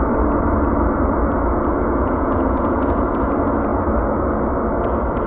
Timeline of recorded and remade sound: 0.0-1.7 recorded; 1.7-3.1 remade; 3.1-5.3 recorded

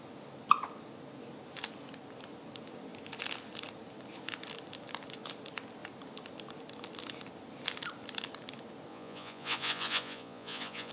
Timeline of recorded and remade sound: 0.0-8.9 recorded; 8.9-10.9 remade

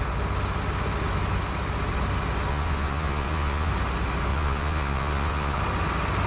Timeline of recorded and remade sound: 0.0-2.5 recorded; 2.5-3.7 remade; 3.7-4.3 recorded; 4.3-5.6 remade; 5.6-6.3 recorded

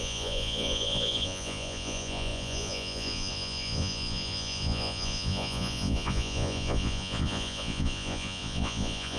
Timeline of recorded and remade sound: 0.0-9.2 remade

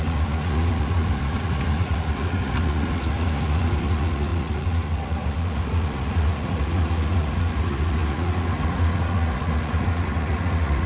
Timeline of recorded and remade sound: 0.0-10.9 remade

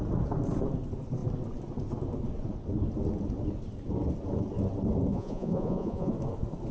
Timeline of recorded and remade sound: 0.0-5.1 recorded; 5.1-6.1 remade; 6.1-6.7 recorded

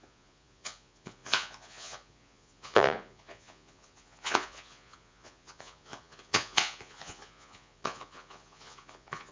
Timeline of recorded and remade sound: 0.0-9.3 remade